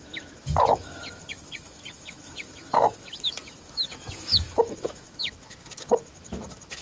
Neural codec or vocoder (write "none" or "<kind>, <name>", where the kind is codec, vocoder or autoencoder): autoencoder, DAC-VAE